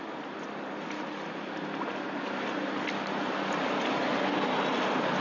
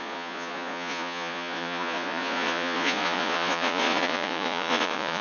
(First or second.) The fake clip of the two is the second